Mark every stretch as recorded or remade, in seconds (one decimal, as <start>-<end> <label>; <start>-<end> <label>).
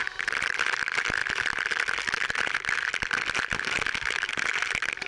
0.0-5.1 recorded